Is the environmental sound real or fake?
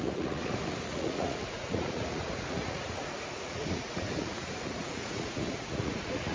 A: fake